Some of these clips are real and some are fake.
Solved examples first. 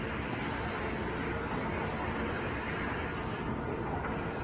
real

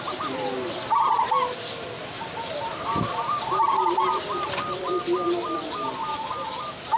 real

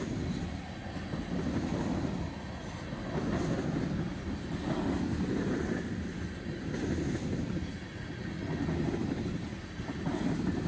real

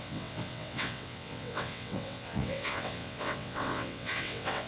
fake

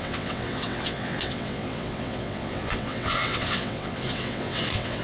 fake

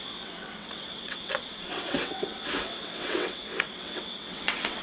fake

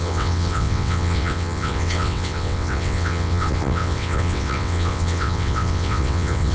fake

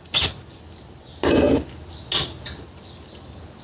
real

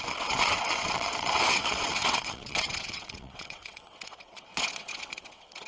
fake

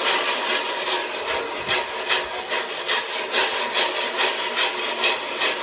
real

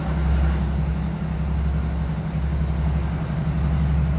real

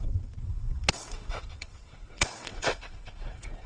fake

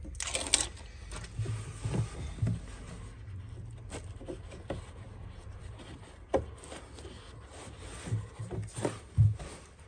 real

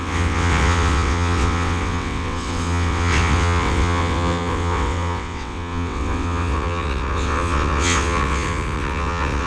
fake